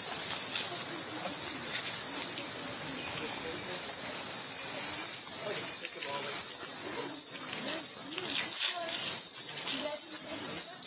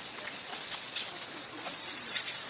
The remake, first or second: second